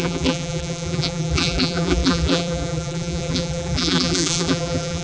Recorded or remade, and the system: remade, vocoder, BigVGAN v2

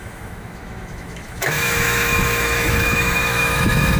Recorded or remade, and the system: remade, autoencoder, DAC-VAE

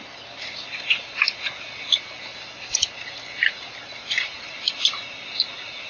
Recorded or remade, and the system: recorded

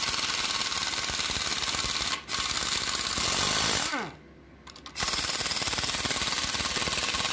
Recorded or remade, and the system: recorded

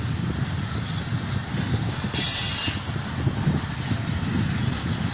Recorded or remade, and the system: recorded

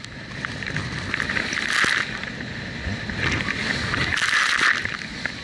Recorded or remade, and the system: recorded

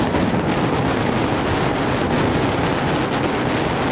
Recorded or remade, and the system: recorded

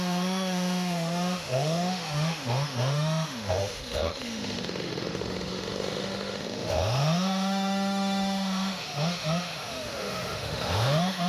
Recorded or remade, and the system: remade, autoencoder, DAC-VAE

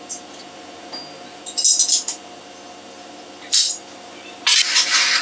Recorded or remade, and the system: recorded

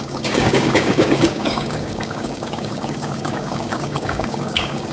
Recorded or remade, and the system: remade, codec, DAC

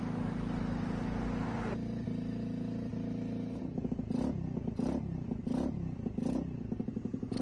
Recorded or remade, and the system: recorded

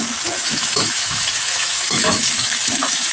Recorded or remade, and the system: remade, autoencoder, DAC-VAE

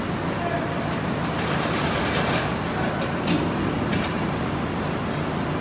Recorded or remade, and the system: recorded